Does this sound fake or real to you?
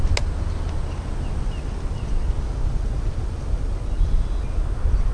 real